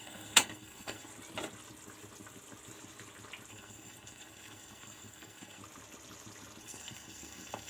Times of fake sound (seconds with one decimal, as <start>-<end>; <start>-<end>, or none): 0.0-1.1; 3.5-5.6; 6.6-7.7